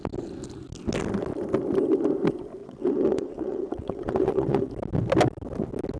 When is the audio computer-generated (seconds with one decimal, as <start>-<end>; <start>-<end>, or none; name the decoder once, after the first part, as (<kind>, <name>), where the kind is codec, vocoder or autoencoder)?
2.6-4.7 (vocoder, WaveNeXt)